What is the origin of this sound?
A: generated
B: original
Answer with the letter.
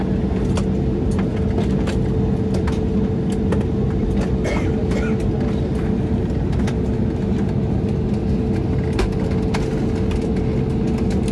B